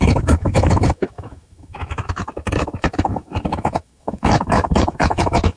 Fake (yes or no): yes